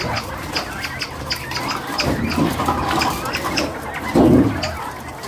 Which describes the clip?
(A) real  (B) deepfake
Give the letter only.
A